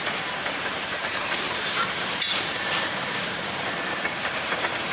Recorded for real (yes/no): no